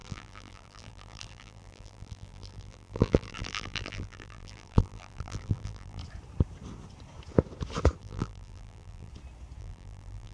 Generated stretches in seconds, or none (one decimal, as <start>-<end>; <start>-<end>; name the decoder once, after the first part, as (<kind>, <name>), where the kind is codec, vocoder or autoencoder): 0.0-6.0 (vocoder, BigVGAN v2); 8.0-9.1; 9.6-10.3

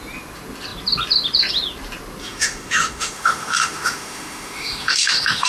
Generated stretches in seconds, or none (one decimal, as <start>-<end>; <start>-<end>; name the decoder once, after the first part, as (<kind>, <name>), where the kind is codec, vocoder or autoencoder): 2.2-5.5 (autoencoder, DAC-VAE)